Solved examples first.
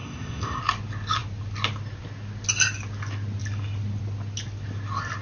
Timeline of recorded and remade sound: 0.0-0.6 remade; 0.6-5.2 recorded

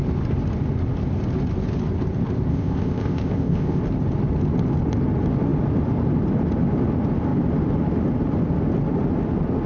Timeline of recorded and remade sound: 0.0-2.5 recorded; 2.5-3.8 remade; 3.8-9.7 recorded